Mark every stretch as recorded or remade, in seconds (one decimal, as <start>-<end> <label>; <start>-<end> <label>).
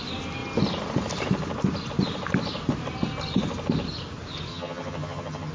0.0-4.5 recorded; 4.5-5.5 remade